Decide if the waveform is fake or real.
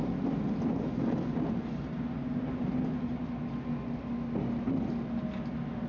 real